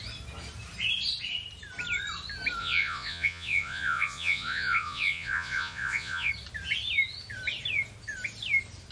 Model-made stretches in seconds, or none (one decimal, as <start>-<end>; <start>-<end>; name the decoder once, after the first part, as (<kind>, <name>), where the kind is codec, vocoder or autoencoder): 2.6-6.3 (vocoder, Vocos)